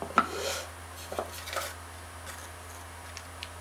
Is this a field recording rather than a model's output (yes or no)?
yes